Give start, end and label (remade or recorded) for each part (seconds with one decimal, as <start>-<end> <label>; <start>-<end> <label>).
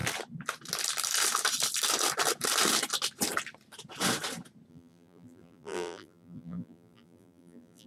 0.0-4.7 recorded; 4.7-7.9 remade